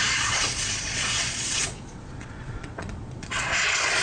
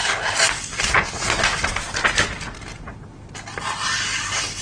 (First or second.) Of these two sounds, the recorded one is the second